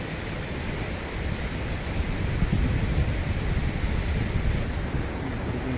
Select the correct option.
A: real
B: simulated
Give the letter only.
A